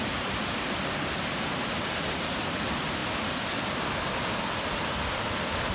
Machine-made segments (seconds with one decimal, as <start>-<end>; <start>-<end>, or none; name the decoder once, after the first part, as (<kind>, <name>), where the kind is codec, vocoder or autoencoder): none